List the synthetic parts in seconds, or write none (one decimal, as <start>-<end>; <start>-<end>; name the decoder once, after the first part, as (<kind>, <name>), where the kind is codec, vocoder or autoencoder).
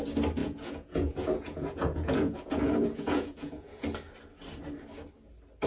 0.4-3.8 (vocoder, Vocos)